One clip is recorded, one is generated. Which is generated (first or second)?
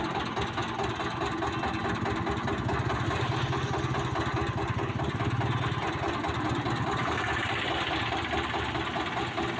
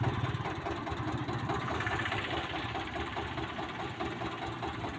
second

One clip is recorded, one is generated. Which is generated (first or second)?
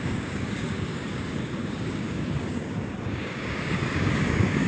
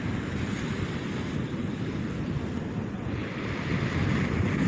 first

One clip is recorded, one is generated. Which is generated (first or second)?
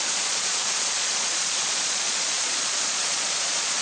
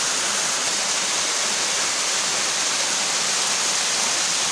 first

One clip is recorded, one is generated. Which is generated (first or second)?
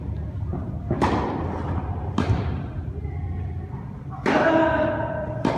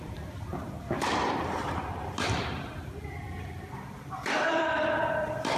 second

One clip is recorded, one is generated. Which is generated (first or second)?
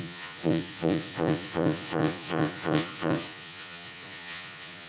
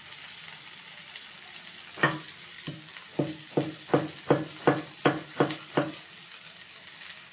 first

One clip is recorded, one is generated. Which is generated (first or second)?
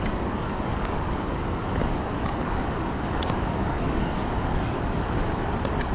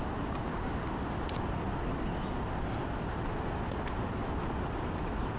first